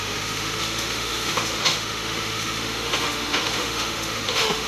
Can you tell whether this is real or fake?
fake